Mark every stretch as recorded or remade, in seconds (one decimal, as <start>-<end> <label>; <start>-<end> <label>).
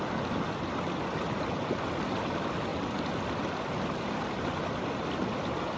0.0-5.8 recorded